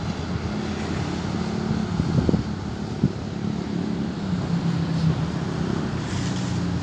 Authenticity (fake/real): real